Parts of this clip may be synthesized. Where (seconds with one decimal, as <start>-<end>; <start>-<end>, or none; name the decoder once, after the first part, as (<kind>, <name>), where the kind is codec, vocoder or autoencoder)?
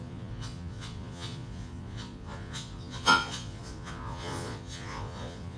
0.0-5.6 (vocoder, Vocos)